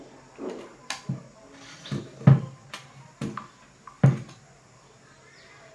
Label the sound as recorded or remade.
recorded